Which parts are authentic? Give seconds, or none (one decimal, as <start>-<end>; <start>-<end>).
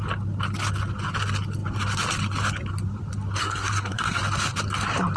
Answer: 0.0-3.4; 4.2-5.2